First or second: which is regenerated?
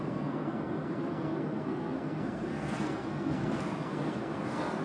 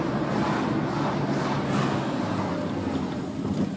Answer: first